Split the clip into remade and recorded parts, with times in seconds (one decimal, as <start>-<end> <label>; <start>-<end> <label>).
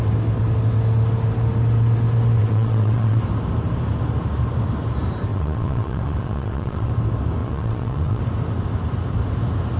0.0-2.4 recorded; 2.4-3.2 remade; 3.2-5.3 recorded; 5.3-6.9 remade; 6.9-7.4 recorded; 7.4-8.2 remade; 8.2-9.8 recorded